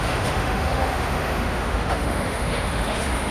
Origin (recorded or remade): remade